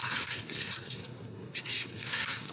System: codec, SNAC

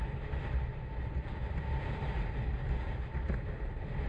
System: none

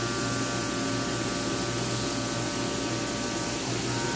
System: none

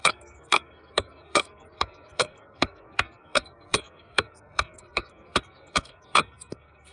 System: codec, SNAC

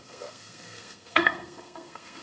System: codec, SNAC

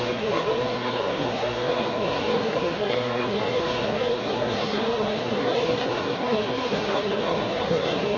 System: codec, SNAC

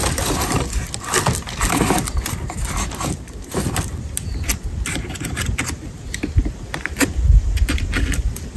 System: none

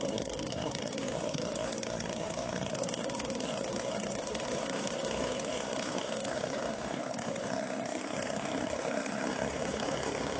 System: codec, SNAC